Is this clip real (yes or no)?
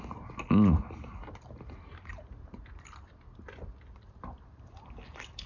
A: yes